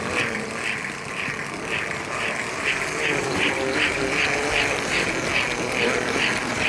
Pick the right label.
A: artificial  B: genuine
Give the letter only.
B